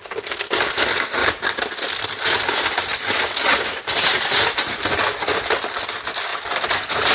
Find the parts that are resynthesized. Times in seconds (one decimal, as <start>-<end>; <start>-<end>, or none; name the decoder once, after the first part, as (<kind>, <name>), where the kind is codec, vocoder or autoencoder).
none